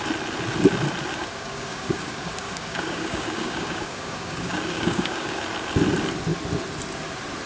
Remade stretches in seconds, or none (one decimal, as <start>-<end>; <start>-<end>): 1.3-5.4

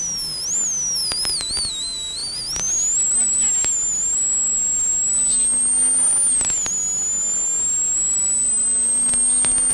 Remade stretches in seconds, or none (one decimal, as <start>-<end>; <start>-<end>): none

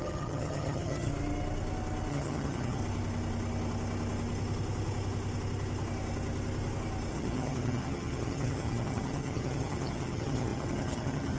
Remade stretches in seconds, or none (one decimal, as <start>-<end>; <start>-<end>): 0.0-1.1; 2.1-2.8; 7.1-11.4

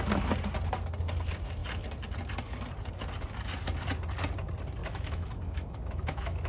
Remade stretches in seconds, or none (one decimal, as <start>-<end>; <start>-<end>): 4.8-6.5